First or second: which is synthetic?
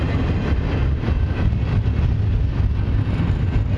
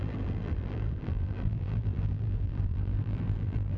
second